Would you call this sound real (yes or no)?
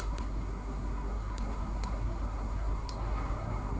no